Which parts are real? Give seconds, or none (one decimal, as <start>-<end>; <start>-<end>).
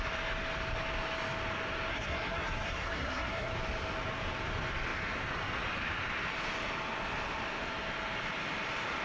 0.0-1.9; 3.5-9.0